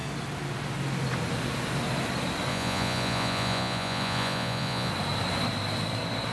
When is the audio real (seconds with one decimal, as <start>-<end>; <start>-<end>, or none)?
0.0-2.5; 4.9-6.3